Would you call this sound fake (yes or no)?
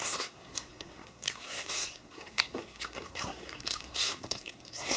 yes